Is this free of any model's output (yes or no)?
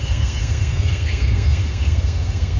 no